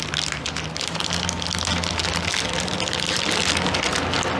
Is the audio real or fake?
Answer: real